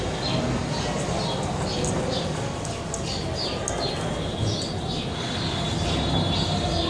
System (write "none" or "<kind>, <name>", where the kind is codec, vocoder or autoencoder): none